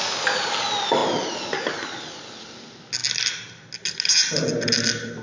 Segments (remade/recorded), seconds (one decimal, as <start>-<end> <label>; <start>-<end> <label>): 0.0-5.2 recorded